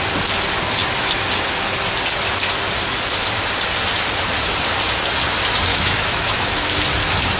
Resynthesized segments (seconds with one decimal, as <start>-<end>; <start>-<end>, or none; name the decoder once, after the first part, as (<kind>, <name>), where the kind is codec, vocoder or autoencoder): 5.7-6.7 (autoencoder, DAC-VAE)